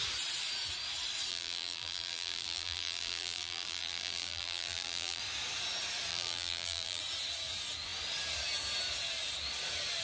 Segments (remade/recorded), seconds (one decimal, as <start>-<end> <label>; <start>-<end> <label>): 0.0-1.3 recorded; 1.3-5.2 remade; 5.2-6.1 recorded; 6.1-7.0 remade; 7.0-10.0 recorded

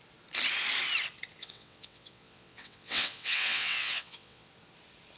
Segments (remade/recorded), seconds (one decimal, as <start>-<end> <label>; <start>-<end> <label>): 0.0-1.4 recorded; 1.4-4.5 remade; 4.5-5.2 recorded

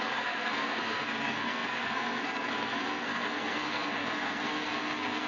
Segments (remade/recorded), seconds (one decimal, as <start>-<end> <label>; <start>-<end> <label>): 0.0-5.3 remade

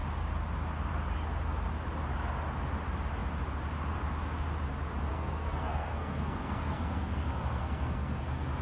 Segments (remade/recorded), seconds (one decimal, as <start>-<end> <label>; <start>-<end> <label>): 0.0-5.1 recorded; 5.1-8.6 remade